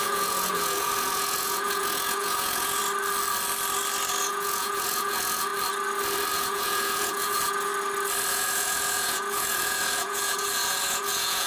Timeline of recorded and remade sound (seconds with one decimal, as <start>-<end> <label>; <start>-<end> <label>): 0.0-2.8 remade; 2.8-4.3 recorded; 4.3-5.5 remade; 5.5-6.3 recorded; 6.3-7.7 remade; 7.7-8.3 recorded; 8.3-11.5 remade